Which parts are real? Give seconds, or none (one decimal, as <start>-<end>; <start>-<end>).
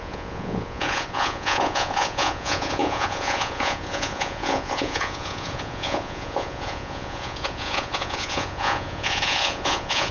none